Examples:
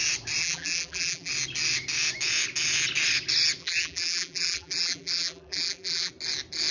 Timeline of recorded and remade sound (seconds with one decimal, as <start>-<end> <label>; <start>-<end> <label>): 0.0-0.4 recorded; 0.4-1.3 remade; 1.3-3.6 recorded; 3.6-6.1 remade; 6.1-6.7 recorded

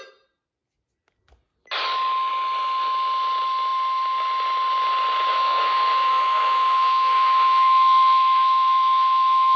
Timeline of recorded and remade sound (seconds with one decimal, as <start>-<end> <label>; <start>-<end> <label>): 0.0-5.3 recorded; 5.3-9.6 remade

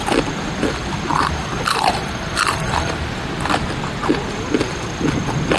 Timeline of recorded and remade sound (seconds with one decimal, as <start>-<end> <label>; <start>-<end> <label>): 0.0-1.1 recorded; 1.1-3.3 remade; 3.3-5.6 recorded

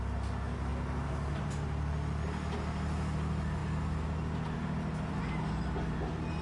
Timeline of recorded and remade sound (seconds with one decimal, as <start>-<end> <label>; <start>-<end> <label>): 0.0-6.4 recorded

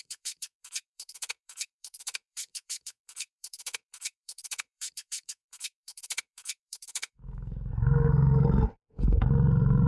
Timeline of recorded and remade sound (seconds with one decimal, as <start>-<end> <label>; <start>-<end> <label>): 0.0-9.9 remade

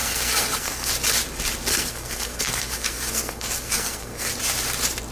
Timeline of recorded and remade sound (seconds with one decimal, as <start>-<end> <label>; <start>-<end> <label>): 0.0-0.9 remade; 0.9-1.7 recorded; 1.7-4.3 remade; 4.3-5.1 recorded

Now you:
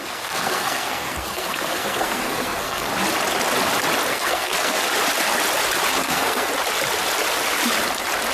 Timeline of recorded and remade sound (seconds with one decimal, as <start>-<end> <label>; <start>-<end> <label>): 0.0-2.9 remade; 2.9-4.1 recorded; 4.1-4.8 remade; 4.8-6.0 recorded; 6.0-6.5 remade; 6.5-8.3 recorded